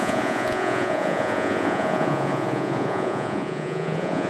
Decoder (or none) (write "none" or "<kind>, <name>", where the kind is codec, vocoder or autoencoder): vocoder, Vocos